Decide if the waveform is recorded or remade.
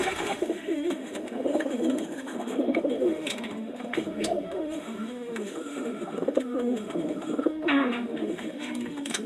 remade